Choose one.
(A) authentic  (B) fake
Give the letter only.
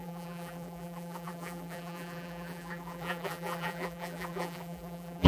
B